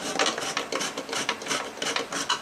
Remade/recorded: recorded